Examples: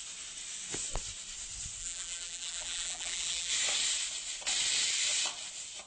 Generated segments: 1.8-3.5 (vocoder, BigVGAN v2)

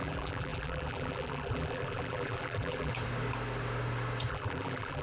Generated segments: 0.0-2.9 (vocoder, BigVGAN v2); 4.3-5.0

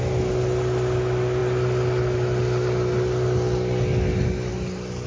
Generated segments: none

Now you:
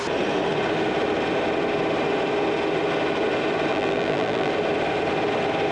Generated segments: 3.7-4.5 (vocoder, BigVGAN v2)